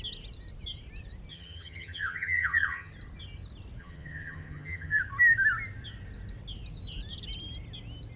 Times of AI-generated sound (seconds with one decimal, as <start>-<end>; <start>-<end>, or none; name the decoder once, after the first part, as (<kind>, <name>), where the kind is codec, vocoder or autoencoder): 1.3-2.9 (vocoder, HiFi-GAN); 3.8-5.0